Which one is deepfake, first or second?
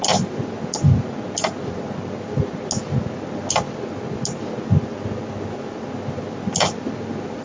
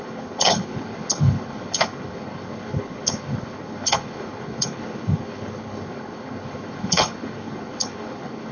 second